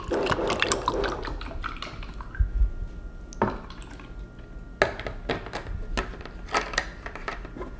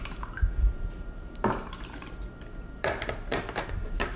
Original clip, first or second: first